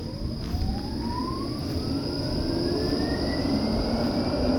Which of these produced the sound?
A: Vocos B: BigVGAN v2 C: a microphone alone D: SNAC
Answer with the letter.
C